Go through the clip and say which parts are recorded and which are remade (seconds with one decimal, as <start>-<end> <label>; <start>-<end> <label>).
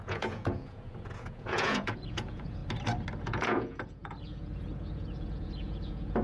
0.0-2.6 remade; 2.6-3.2 recorded; 3.2-6.2 remade